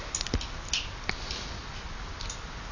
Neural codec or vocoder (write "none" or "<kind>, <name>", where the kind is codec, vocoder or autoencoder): none